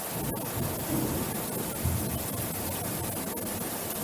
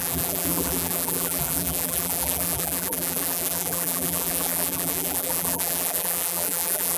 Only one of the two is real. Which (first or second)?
first